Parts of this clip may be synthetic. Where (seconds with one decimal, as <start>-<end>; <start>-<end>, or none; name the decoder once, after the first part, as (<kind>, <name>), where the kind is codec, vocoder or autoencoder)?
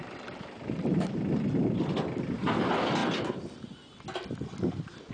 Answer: none